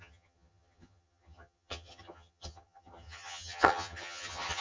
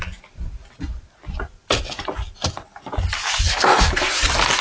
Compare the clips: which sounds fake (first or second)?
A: first